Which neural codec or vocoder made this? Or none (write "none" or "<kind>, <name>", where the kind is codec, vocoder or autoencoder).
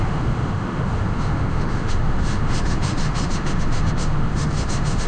autoencoder, DAC-VAE